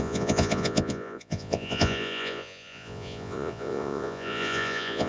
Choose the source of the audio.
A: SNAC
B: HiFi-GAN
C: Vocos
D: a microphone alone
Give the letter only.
C